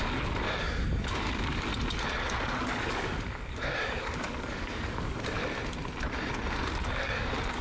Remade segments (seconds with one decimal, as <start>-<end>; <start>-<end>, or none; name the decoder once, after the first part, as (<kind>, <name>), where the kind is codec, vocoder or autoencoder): 0.0-1.7 (codec, DAC); 2.6-5.4; 6.8-7.6